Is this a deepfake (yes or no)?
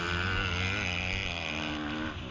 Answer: no